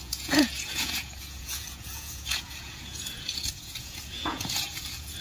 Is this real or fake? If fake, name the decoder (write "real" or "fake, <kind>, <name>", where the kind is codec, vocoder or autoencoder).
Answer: fake, vocoder, Vocos